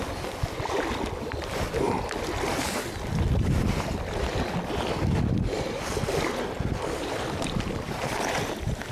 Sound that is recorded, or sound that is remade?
recorded